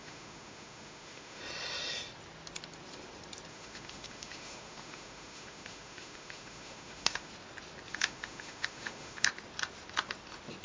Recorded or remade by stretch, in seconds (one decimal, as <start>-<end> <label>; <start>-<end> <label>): 0.0-1.4 remade; 1.4-3.5 recorded; 3.5-7.3 remade; 7.3-7.9 recorded; 7.9-9.3 remade; 9.3-10.6 recorded

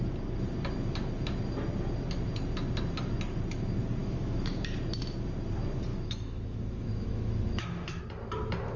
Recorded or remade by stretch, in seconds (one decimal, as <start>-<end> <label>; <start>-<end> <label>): 0.0-4.0 recorded; 4.0-4.5 remade; 4.5-5.9 recorded; 5.9-8.0 remade; 8.0-8.8 recorded

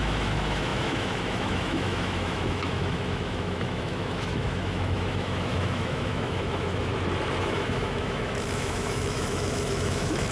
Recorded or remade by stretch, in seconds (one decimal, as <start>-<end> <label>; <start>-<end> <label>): 0.0-6.9 remade; 6.9-7.4 recorded; 7.4-10.3 remade

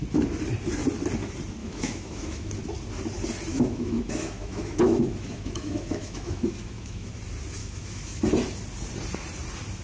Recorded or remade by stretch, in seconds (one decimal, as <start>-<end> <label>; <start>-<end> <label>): 0.0-1.6 recorded; 1.6-2.5 remade; 2.5-3.5 recorded; 3.5-7.1 remade; 7.1-7.6 recorded; 7.6-8.2 remade; 8.2-9.8 recorded

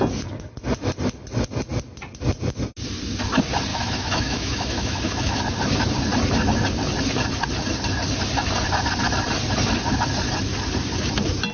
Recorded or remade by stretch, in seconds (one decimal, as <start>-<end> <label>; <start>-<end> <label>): 0.0-3.7 recorded; 3.7-5.4 remade; 5.4-11.5 recorded

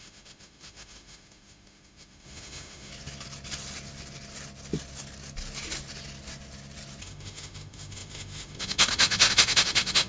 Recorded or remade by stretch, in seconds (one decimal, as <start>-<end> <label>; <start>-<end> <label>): 0.0-2.9 remade; 2.9-7.0 recorded; 7.0-10.1 remade

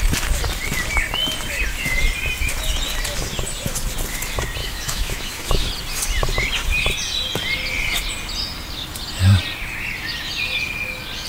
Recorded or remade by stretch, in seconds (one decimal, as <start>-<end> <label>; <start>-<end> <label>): 0.0-4.6 recorded; 4.6-5.7 remade; 5.7-11.3 recorded

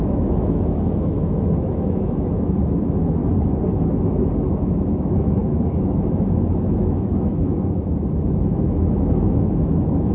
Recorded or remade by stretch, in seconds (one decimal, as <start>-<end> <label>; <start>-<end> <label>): 0.0-3.2 remade; 3.2-4.4 recorded; 4.4-10.1 remade